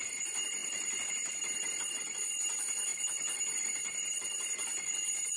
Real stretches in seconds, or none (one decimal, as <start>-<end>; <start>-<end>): 0.0-5.4